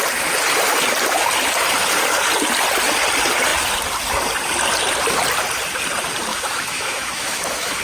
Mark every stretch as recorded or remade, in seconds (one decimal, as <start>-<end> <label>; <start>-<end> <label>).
0.0-6.3 recorded; 6.3-7.8 remade

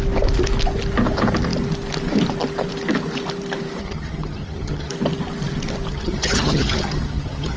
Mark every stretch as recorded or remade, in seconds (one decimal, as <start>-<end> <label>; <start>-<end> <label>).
0.0-3.8 recorded; 3.8-4.9 remade; 4.9-5.9 recorded; 5.9-7.6 remade

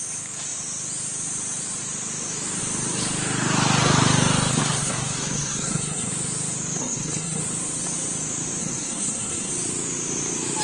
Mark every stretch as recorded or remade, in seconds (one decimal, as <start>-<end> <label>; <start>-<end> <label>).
0.0-4.5 recorded; 4.5-6.1 remade; 6.1-6.8 recorded; 6.8-7.4 remade; 7.4-8.6 recorded; 8.6-9.5 remade; 9.5-10.6 recorded

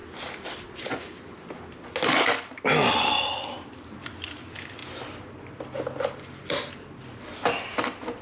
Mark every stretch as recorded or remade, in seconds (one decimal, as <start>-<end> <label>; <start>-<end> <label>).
0.0-8.2 recorded